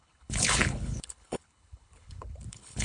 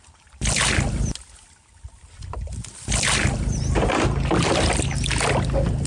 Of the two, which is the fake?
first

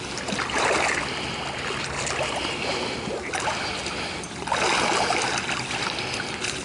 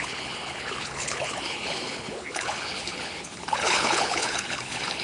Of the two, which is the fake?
second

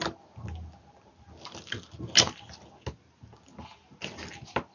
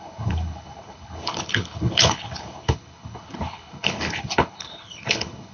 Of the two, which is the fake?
second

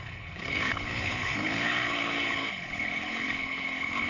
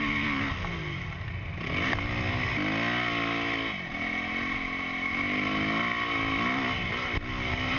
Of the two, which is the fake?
first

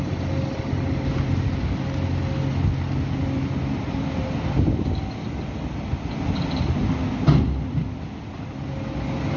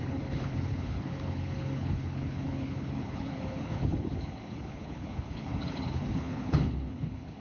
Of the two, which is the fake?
second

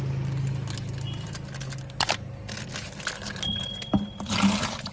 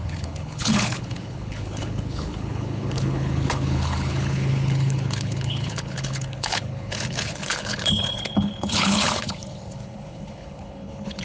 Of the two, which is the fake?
second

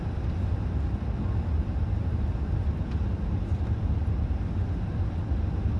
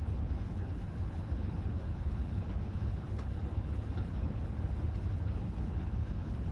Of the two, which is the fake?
second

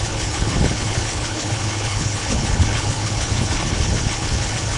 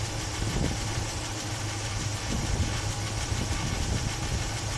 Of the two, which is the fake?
first